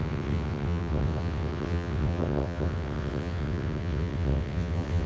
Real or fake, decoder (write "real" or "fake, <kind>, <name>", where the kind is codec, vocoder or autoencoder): fake, vocoder, WaveNeXt